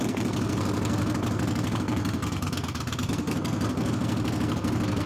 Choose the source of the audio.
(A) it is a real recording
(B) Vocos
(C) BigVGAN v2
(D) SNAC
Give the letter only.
D